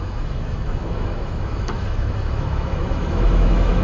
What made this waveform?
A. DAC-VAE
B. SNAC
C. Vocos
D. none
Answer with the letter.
A